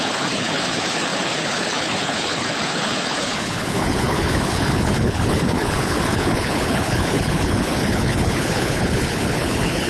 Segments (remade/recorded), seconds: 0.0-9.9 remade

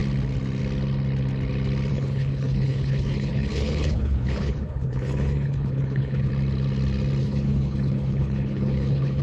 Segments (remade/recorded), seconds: 0.0-1.9 recorded; 1.9-6.3 remade; 6.3-7.2 recorded; 7.2-9.2 remade

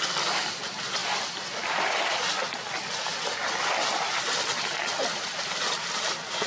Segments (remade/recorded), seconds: 0.0-6.5 recorded

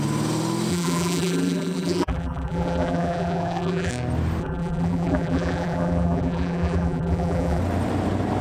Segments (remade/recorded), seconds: 0.0-0.7 recorded; 0.7-3.9 remade; 3.9-4.4 recorded; 4.4-7.6 remade; 7.6-8.4 recorded